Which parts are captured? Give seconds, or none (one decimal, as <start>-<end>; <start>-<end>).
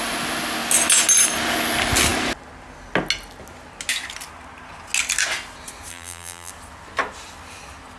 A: 0.0-5.9; 6.5-8.0